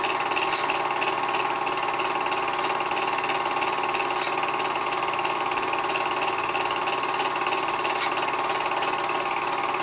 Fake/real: real